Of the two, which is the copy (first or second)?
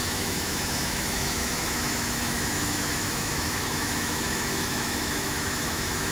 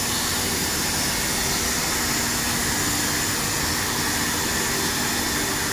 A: first